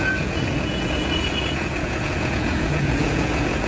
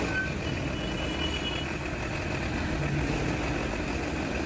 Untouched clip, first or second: second